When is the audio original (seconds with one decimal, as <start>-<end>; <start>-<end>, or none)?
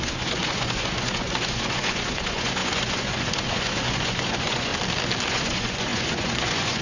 4.7-5.3